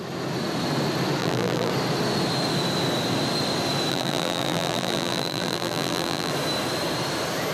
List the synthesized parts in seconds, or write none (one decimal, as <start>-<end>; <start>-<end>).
1.2-1.7; 3.9-6.3